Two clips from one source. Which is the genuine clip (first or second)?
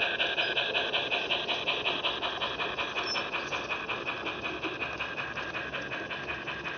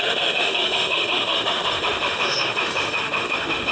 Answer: first